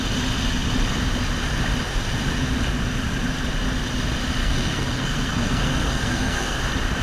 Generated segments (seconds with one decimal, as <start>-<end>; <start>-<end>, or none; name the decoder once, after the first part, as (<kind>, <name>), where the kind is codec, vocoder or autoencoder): 4.4-6.6 (codec, SNAC)